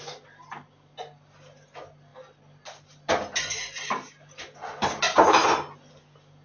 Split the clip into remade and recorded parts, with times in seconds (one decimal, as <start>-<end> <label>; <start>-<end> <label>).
0.0-6.4 recorded